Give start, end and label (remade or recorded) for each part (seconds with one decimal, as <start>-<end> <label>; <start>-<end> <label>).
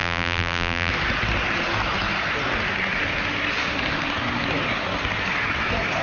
0.0-0.9 remade; 0.9-6.0 recorded